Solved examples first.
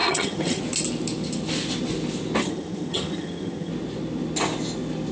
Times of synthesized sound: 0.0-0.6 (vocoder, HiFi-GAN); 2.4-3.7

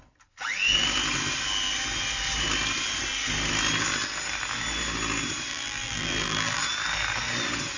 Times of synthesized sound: 5.5-6.6 (vocoder, BigVGAN v2)

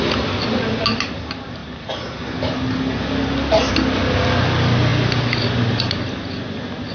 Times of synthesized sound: none

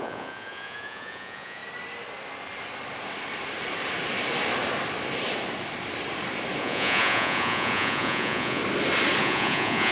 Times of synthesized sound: 0.0-1.6 (vocoder, Vocos); 6.6-8.6; 9.2-9.9

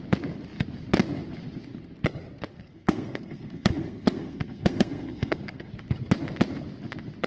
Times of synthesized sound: 2.5-5.7 (codec, SNAC)